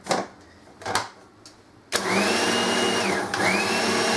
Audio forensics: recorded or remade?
recorded